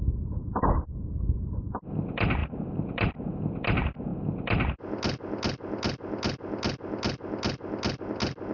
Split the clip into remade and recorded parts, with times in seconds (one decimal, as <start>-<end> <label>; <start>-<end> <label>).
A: 0.0-0.4 recorded; 0.4-1.6 remade; 1.6-2.4 recorded; 2.4-3.1 remade; 3.1-8.5 recorded